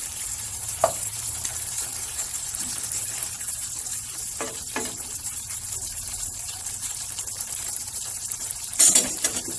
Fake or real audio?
fake